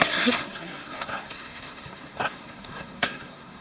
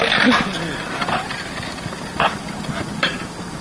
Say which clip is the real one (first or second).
second